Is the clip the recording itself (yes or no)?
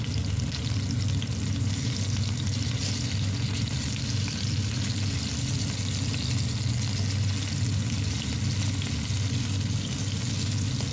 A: yes